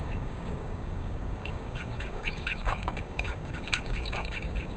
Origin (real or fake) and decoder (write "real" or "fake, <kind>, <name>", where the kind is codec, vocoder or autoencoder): fake, codec, DAC